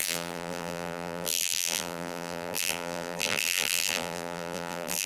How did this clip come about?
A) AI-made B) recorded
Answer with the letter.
A